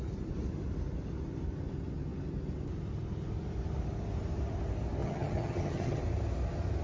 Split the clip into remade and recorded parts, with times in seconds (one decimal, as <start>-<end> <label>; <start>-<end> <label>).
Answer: 0.0-5.0 recorded; 5.0-6.0 remade; 6.0-6.8 recorded